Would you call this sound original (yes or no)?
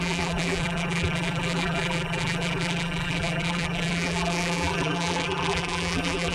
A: no